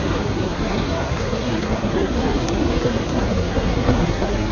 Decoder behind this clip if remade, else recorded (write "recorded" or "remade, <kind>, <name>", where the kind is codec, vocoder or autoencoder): remade, codec, SNAC